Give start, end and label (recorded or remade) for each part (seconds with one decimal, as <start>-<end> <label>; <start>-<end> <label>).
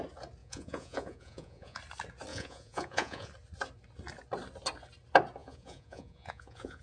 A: 0.0-0.4 recorded; 0.4-1.8 remade; 1.8-2.3 recorded; 2.3-3.3 remade; 3.3-5.4 recorded; 5.4-6.8 remade